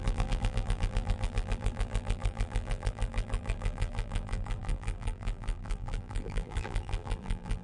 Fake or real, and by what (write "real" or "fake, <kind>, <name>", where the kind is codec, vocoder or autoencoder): fake, vocoder, BigVGAN v2